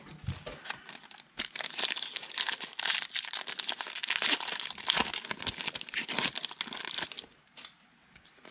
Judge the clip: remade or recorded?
recorded